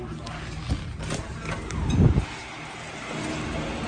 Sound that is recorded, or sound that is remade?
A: recorded